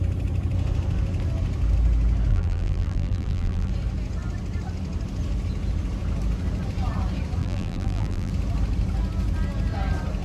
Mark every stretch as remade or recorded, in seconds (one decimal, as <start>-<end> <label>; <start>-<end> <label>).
0.0-2.3 recorded; 2.3-3.7 remade; 3.7-7.4 recorded; 7.4-8.3 remade; 8.3-10.2 recorded

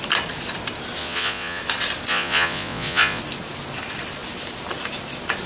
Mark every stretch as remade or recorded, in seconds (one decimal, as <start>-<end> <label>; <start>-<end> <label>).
0.0-1.0 recorded; 1.0-1.6 remade; 1.6-2.1 recorded; 2.1-3.2 remade; 3.2-5.5 recorded

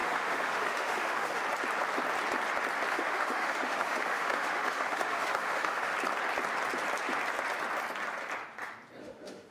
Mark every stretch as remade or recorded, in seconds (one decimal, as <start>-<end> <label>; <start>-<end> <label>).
0.0-1.4 remade; 1.4-2.9 recorded; 2.9-5.9 remade; 5.9-9.0 recorded; 9.0-9.5 remade

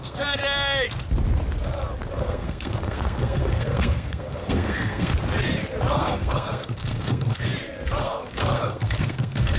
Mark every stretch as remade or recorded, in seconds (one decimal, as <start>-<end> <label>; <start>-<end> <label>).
0.0-0.4 remade; 0.4-2.2 recorded; 2.2-5.1 remade; 5.1-5.9 recorded; 5.9-7.5 remade; 7.5-8.0 recorded; 8.0-9.6 remade

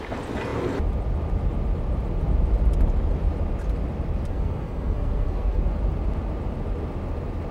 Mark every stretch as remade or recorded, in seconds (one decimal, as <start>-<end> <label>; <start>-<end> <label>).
0.0-4.3 recorded; 4.3-5.6 remade; 5.6-7.5 recorded

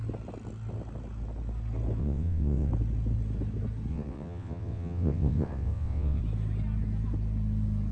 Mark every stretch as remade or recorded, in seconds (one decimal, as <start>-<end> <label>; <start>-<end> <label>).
0.0-2.0 recorded; 2.0-2.7 remade; 2.7-3.9 recorded; 3.9-6.2 remade; 6.2-7.9 recorded